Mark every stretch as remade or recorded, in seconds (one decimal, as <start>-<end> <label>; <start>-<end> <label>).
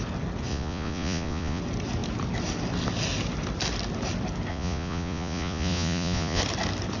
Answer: 0.0-0.5 recorded; 0.5-1.6 remade; 1.6-4.5 recorded; 4.5-6.4 remade; 6.4-7.0 recorded